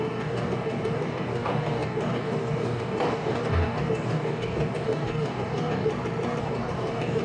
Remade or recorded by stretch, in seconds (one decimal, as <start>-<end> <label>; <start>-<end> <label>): 0.0-5.9 remade; 5.9-6.4 recorded; 6.4-7.2 remade